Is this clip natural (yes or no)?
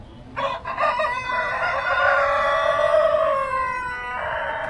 yes